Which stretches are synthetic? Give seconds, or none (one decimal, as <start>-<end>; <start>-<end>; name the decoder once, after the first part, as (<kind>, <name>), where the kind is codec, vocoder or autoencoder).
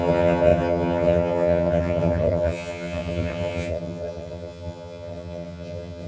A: 0.0-6.1 (vocoder, HiFi-GAN)